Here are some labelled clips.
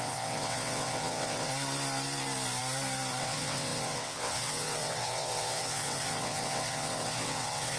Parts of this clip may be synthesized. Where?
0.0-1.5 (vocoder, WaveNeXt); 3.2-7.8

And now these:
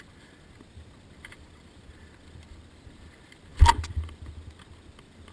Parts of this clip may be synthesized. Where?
none

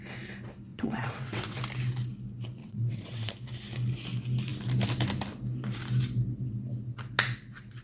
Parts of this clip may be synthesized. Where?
0.7-1.6 (vocoder, WaveNeXt); 2.6-3.3

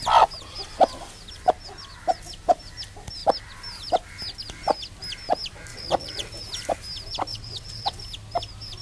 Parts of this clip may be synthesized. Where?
5.7-6.3 (vocoder, WaveNeXt); 7.3-8.0